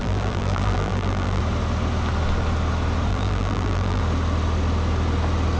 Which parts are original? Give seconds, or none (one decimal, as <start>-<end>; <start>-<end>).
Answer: 1.4-3.1; 4.0-5.6